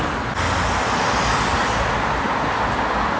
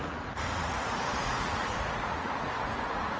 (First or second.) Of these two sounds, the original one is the first